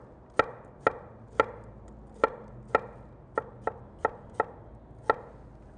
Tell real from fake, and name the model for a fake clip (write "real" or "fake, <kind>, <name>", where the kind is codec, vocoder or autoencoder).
real